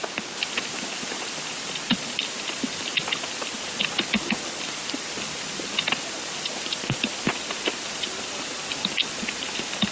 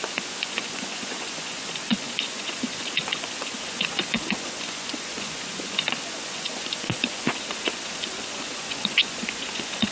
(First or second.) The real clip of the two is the first